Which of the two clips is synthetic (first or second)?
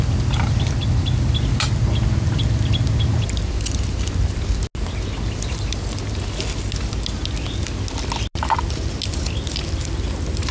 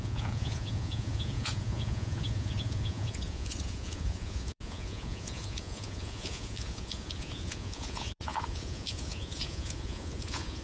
second